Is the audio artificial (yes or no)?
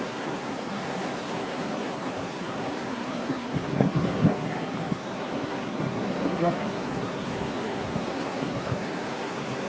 yes